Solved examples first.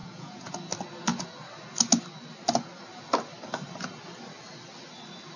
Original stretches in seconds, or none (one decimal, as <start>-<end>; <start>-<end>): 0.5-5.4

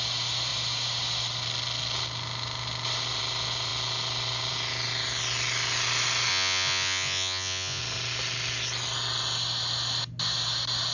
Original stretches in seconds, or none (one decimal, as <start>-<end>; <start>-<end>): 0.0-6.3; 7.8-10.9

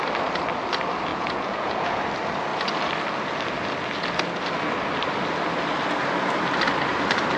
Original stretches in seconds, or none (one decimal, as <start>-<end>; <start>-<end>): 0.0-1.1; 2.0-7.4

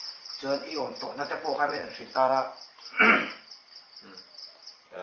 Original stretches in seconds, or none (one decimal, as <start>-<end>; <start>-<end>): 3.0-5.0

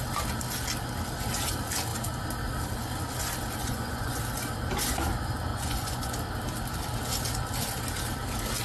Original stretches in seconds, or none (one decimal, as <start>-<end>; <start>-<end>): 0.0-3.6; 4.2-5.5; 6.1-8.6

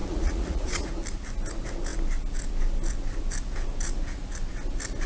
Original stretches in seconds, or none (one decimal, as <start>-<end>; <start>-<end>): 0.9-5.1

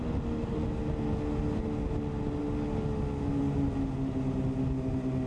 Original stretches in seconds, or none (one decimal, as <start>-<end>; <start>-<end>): 0.0-5.3

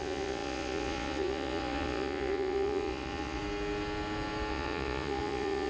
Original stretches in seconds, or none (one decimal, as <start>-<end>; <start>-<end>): 3.4-4.5